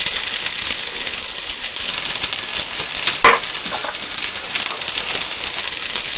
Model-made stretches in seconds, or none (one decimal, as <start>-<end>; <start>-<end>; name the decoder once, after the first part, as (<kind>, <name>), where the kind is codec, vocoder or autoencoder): 0.0-1.9 (codec, HILCodec); 5.6-6.2